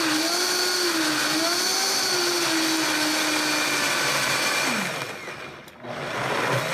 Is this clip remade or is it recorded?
recorded